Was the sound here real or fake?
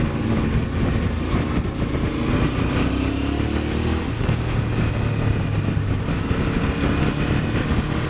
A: real